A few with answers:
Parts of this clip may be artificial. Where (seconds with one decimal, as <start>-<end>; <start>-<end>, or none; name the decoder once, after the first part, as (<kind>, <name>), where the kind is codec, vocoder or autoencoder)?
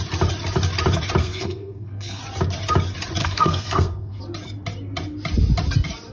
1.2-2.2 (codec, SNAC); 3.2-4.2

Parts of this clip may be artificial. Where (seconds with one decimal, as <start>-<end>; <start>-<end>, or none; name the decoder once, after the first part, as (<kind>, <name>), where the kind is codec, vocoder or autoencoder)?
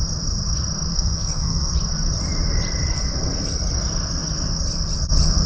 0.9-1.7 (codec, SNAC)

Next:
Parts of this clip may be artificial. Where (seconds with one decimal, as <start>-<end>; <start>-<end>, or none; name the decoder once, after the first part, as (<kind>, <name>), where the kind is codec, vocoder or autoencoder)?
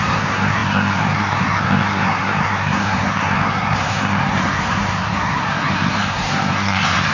0.0-7.1 (codec, SNAC)